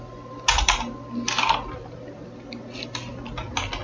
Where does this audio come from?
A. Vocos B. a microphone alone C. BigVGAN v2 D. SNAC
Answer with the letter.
B